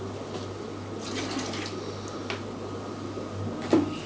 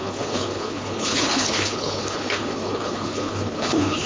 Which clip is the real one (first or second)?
first